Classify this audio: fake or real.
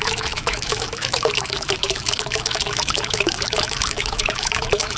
fake